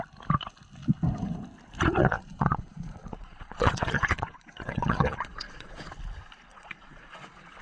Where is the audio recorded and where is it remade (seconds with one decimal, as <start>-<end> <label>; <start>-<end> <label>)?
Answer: 0.0-2.0 recorded; 2.0-5.9 remade; 5.9-6.5 recorded; 6.5-7.6 remade